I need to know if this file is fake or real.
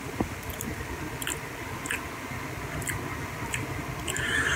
real